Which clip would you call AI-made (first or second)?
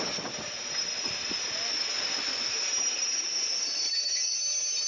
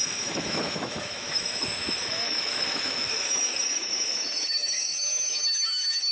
second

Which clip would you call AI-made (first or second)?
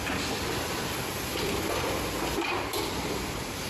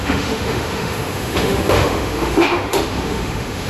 second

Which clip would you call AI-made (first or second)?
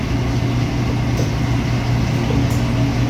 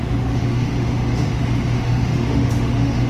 second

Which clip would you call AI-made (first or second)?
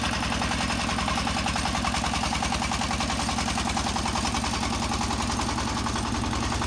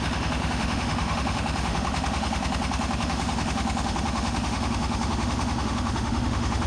second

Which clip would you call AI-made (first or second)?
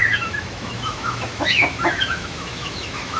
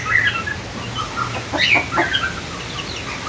first